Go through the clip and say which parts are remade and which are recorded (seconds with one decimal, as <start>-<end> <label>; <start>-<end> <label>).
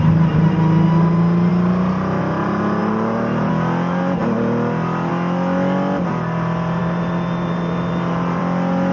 0.0-2.8 recorded; 2.8-3.5 remade; 3.5-6.8 recorded; 6.8-8.4 remade; 8.4-8.9 recorded